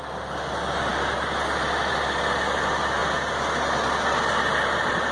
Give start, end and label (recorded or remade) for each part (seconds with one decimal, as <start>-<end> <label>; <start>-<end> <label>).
0.0-5.1 recorded